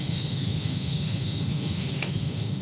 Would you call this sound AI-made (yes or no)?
yes